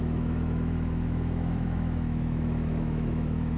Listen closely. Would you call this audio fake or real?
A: fake